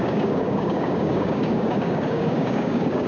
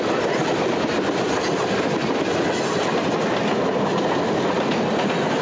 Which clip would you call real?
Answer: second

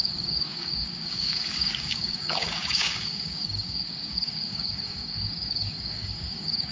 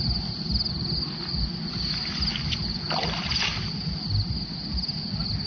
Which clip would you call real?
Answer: second